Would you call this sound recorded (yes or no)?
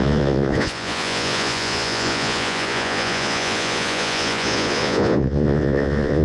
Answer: no